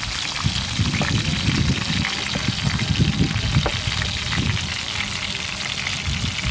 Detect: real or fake real